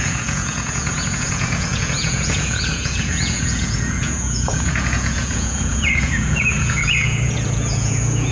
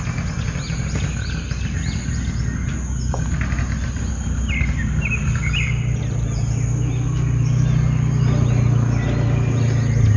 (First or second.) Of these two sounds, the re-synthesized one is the first